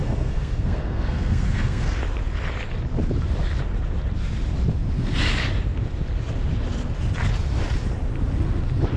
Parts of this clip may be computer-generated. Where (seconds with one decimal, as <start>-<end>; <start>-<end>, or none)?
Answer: 0.0-2.0